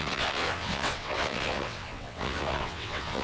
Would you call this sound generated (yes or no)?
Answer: yes